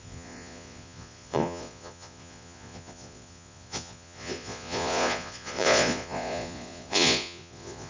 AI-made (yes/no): yes